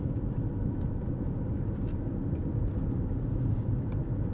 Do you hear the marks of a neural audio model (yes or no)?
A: no